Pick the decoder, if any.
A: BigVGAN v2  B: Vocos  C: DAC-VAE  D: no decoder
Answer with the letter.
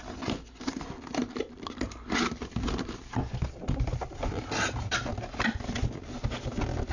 D